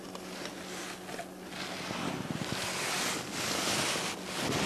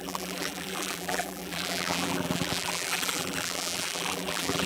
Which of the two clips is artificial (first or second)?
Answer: second